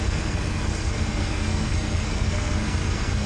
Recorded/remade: remade